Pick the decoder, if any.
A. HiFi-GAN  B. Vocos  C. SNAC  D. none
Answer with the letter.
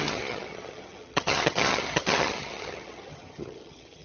A